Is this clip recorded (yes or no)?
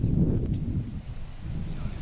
yes